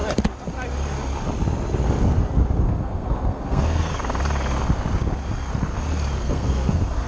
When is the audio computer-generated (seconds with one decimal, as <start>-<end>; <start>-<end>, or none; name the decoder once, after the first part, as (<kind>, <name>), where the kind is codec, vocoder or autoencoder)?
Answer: 2.6-3.9 (codec, SNAC); 6.2-7.1

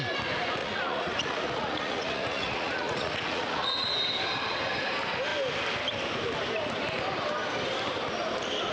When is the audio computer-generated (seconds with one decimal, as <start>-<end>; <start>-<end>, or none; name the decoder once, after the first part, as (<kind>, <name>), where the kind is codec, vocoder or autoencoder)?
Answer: 0.6-3.9 (vocoder, Vocos)

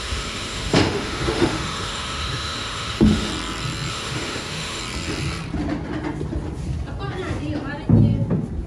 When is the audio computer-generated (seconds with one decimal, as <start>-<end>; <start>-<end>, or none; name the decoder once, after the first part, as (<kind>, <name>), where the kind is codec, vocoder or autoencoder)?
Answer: 0.0-3.3 (autoencoder, DAC-VAE); 3.9-4.8

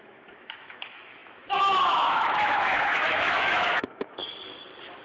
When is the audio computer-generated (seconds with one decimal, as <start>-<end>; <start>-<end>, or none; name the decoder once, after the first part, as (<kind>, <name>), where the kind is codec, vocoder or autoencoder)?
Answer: 0.0-4.2 (autoencoder, DAC-VAE)

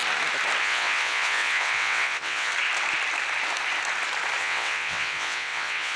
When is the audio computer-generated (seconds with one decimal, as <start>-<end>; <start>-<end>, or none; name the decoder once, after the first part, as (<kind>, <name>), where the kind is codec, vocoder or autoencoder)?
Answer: 0.6-2.5 (vocoder, WaveNeXt); 4.4-6.0